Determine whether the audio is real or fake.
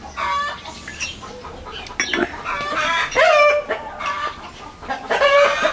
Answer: real